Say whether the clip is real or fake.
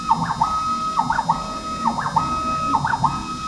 real